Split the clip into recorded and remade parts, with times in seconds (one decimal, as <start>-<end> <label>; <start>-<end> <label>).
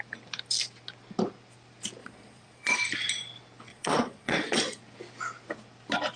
0.0-2.0 recorded; 2.0-2.8 remade; 2.8-3.7 recorded; 3.7-4.8 remade; 4.8-6.2 recorded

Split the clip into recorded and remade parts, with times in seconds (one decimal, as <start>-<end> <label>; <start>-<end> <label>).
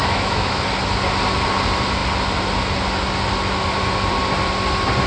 0.0-0.6 remade; 0.6-5.1 recorded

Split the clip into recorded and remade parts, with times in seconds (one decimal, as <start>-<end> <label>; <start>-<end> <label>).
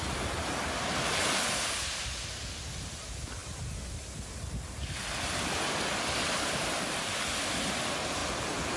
0.0-8.8 recorded